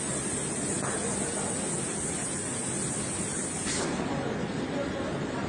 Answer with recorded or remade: recorded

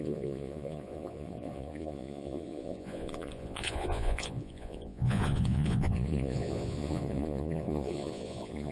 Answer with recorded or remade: remade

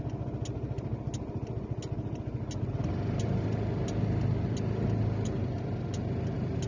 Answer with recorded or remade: recorded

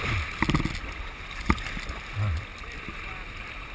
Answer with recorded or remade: recorded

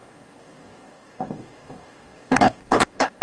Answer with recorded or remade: remade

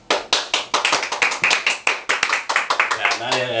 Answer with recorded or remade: recorded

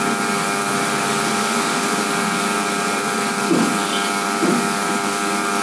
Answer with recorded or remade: remade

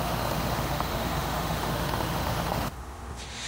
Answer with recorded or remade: remade